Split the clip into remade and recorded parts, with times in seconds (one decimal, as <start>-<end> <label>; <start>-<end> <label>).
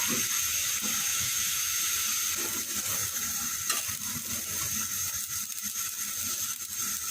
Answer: 0.0-1.1 recorded; 1.1-1.8 remade; 1.8-7.1 recorded